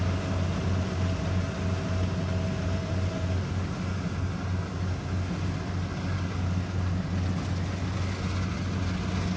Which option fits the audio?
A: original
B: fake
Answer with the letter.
A